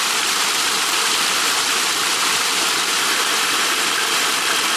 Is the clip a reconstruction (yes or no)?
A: yes